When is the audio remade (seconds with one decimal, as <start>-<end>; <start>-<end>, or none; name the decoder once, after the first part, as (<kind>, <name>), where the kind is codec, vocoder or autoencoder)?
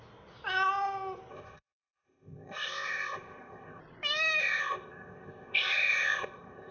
1.3-3.8 (codec, ZipCodec); 4.4-6.7